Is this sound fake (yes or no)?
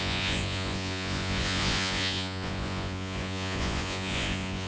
yes